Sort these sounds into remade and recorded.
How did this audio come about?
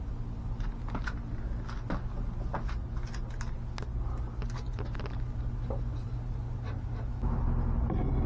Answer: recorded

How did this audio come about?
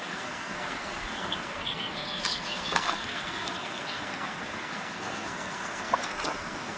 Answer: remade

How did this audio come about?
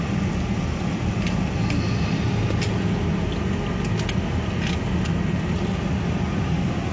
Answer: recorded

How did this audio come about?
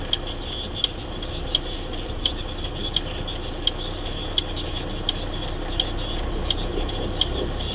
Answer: recorded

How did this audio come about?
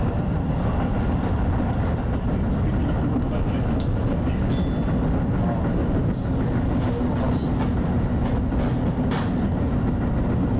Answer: recorded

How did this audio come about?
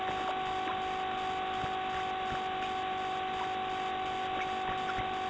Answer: recorded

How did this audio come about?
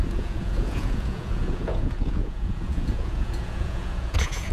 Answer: remade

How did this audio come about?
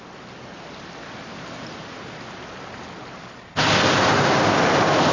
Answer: recorded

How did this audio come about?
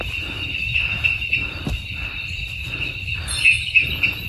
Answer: remade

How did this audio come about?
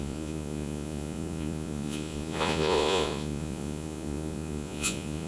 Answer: remade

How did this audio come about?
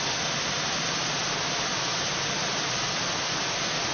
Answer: recorded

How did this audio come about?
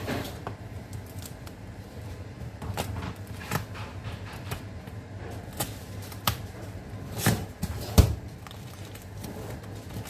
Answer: remade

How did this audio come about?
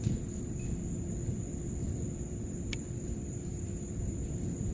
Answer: remade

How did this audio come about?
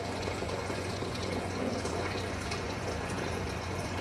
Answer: remade